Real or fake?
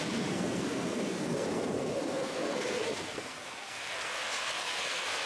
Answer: fake